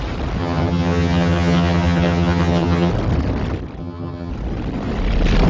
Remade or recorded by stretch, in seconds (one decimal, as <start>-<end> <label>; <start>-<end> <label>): 0.0-0.4 recorded; 0.4-2.9 remade; 2.9-3.8 recorded; 3.8-4.3 remade; 4.3-5.5 recorded